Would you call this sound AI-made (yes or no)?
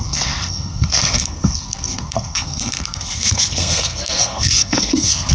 yes